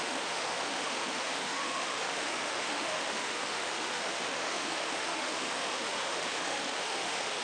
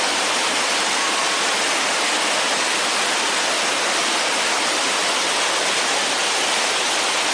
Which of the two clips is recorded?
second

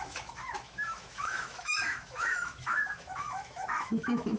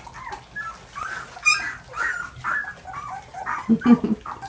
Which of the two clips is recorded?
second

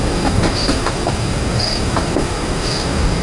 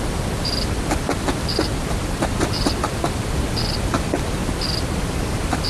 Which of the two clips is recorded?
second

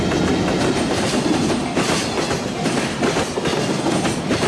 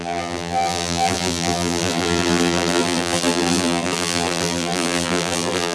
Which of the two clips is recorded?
first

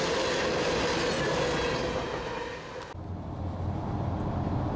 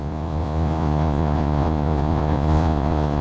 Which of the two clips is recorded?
first